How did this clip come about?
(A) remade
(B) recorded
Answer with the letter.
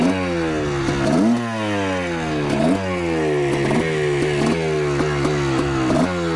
B